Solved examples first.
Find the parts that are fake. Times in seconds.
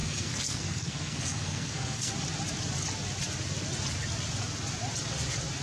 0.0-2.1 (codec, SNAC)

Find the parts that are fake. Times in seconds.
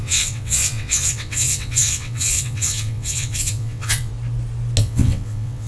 0.0-4.1 (vocoder, WaveNeXt); 4.8-5.7